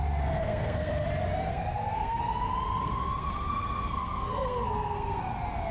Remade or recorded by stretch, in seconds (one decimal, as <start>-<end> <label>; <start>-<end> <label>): 0.0-0.4 recorded; 0.4-0.9 remade; 0.9-1.5 recorded; 1.5-2.2 remade; 2.2-2.8 recorded; 2.8-5.2 remade; 5.2-5.7 recorded